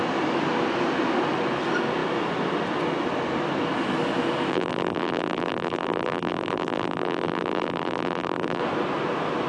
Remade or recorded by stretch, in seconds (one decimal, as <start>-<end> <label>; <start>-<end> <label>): 0.0-4.5 recorded; 4.5-8.6 remade; 8.6-9.5 recorded

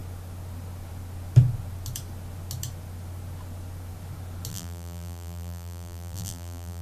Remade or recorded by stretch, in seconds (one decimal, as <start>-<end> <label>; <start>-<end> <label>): 0.0-4.5 recorded; 4.5-6.8 remade